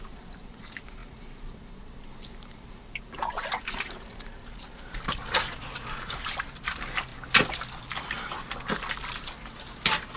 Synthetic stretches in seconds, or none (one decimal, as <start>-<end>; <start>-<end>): 0.0-7.1